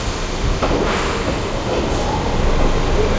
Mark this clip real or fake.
real